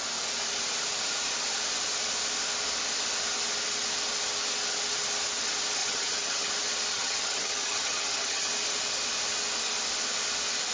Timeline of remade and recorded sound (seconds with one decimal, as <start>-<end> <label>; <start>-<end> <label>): 0.0-5.8 recorded; 5.8-6.5 remade; 6.5-6.9 recorded; 6.9-8.5 remade; 8.5-10.7 recorded